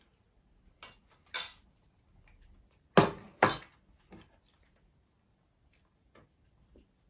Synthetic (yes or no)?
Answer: no